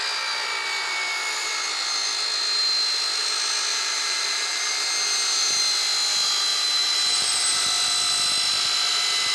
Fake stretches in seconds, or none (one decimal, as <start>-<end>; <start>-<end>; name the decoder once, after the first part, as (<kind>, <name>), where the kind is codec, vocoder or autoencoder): 3.7-5.6 (vocoder, BigVGAN v2); 6.5-7.5